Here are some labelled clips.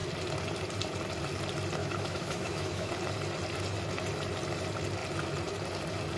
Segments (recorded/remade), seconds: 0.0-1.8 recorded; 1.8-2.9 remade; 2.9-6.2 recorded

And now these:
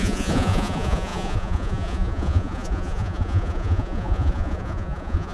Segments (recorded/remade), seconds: 0.0-5.3 remade

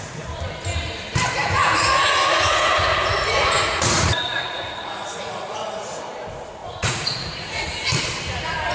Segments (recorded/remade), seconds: 0.0-1.4 recorded; 1.4-6.0 remade; 6.0-6.6 recorded; 6.6-7.7 remade; 7.7-8.7 recorded

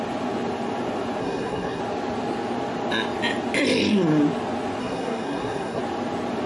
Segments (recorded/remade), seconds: 0.0-1.2 recorded; 1.2-1.8 remade; 1.8-4.8 recorded; 4.8-5.8 remade; 5.8-6.5 recorded

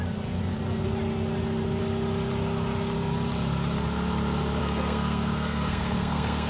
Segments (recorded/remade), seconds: 0.0-4.6 recorded; 4.6-6.5 remade